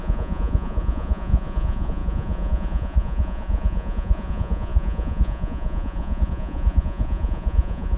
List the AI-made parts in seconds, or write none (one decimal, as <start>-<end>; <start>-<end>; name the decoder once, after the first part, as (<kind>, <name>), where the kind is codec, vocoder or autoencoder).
0.0-8.0 (vocoder, Vocos)